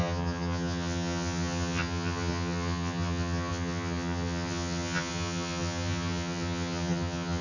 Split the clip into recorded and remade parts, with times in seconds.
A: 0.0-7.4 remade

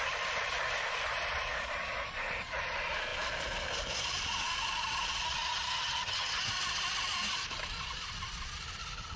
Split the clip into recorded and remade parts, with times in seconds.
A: 0.0-5.7 recorded; 5.7-6.4 remade; 6.4-9.2 recorded

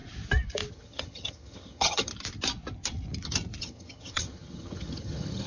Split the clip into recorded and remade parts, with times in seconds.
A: 0.0-0.7 recorded; 0.7-2.1 remade; 2.1-3.6 recorded; 3.6-5.5 remade

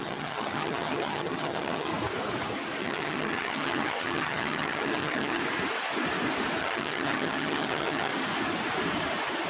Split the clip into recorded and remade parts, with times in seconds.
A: 0.0-1.9 remade; 1.9-2.8 recorded; 2.8-5.4 remade; 5.4-6.6 recorded; 6.6-8.1 remade; 8.1-9.5 recorded

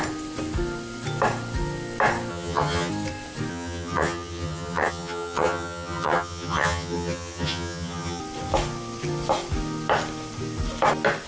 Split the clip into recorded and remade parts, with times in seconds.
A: 0.0-2.3 recorded; 2.3-2.9 remade; 2.9-3.5 recorded; 3.5-8.2 remade; 8.2-11.3 recorded

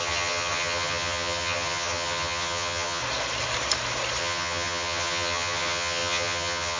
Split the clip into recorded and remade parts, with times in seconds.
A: 0.0-3.0 remade; 3.0-4.2 recorded; 4.2-6.8 remade